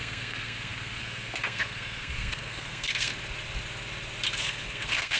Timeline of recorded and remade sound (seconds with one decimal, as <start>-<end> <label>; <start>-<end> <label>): 0.0-3.1 remade; 3.1-4.4 recorded; 4.4-5.2 remade